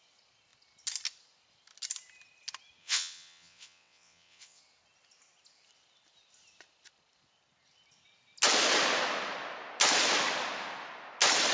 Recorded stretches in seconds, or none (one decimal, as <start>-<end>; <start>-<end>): 0.0-2.8; 4.6-11.5